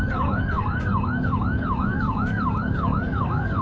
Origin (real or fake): fake